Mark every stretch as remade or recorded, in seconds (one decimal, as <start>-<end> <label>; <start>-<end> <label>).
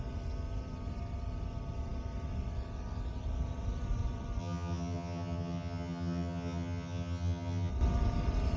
0.0-4.4 recorded; 4.4-7.7 remade; 7.7-8.6 recorded